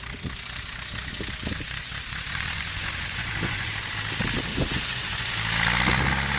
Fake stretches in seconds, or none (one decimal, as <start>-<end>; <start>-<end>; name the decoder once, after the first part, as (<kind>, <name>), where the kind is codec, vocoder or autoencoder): 1.5-3.7 (vocoder, Vocos); 4.5-5.3